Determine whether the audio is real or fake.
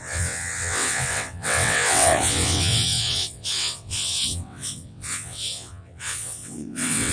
fake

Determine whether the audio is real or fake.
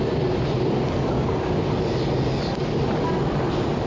real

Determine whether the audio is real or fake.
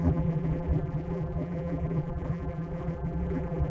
fake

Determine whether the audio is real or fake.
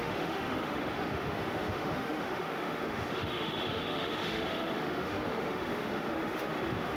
fake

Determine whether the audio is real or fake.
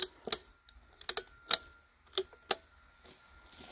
real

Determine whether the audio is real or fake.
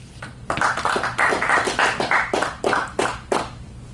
real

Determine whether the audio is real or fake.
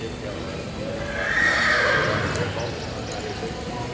real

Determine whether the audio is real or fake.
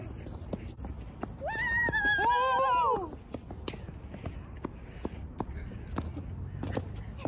real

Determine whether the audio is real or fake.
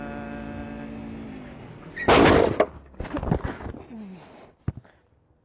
real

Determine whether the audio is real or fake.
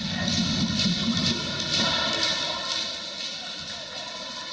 real